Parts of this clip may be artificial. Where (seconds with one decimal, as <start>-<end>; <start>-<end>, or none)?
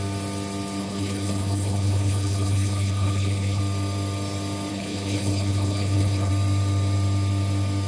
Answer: 0.8-3.6; 4.7-6.3